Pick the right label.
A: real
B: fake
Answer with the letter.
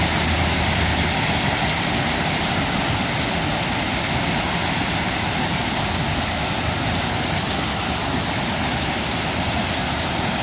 A